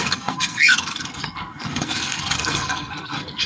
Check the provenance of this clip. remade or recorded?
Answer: remade